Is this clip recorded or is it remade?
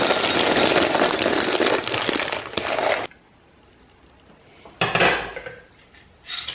recorded